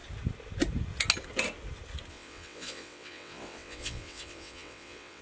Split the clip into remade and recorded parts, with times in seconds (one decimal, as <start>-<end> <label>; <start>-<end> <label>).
0.0-2.1 recorded; 2.1-5.2 remade